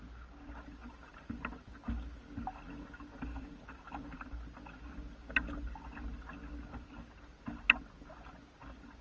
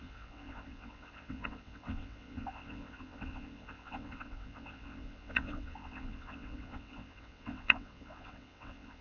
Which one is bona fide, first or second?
first